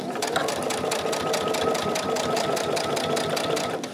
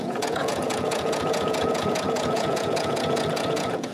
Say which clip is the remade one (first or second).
second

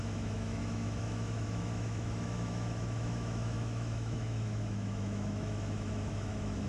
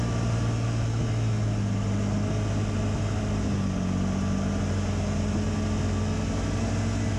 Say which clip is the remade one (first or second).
first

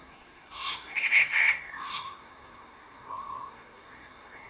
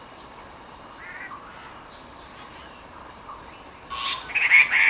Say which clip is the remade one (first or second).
first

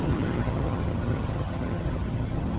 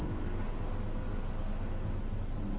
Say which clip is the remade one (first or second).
first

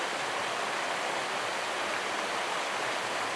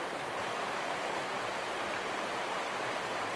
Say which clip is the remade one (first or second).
second